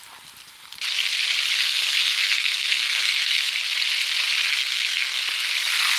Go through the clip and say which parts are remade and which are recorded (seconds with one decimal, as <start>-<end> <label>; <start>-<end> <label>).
0.0-1.6 recorded; 1.6-3.5 remade; 3.5-4.5 recorded; 4.5-5.2 remade; 5.2-6.0 recorded